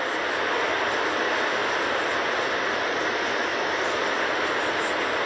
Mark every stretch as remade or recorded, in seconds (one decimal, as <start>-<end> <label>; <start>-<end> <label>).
0.0-5.3 recorded